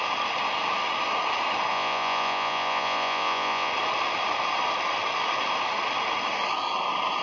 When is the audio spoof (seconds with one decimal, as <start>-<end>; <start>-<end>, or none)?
1.7-3.7